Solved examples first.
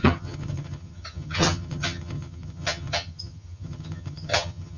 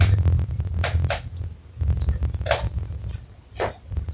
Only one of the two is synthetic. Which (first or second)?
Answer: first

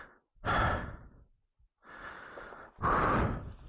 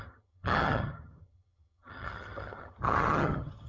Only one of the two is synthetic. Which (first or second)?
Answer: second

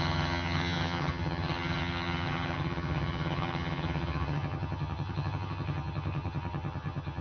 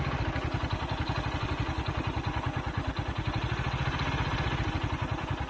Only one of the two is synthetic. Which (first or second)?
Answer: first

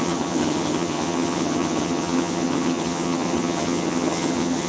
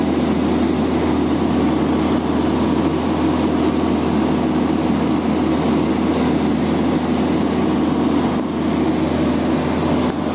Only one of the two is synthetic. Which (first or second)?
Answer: first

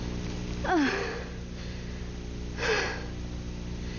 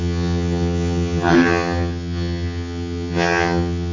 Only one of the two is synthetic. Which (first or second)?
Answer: second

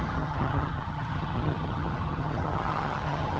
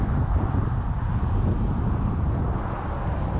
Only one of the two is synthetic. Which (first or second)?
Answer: first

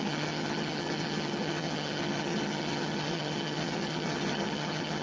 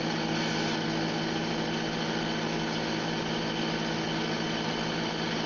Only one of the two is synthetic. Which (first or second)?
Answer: first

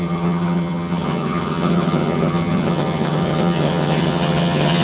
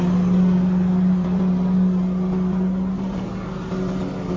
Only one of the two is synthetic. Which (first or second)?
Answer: first